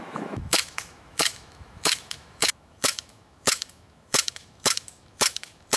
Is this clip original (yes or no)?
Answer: no